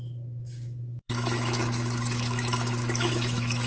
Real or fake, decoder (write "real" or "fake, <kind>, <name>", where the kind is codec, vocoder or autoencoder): fake, autoencoder, DAC-VAE